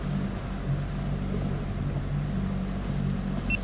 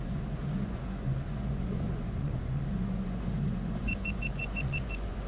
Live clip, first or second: first